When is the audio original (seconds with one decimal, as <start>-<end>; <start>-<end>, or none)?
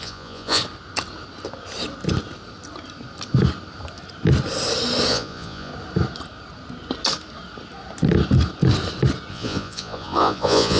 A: 0.6-5.1; 5.7-9.3